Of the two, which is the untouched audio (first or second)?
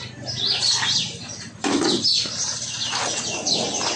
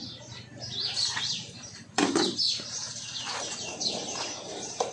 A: first